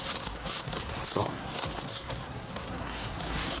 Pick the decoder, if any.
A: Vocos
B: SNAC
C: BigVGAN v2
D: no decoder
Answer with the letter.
B